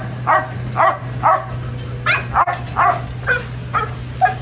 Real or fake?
real